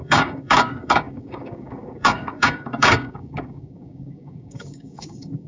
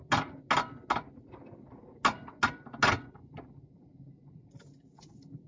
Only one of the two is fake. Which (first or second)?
first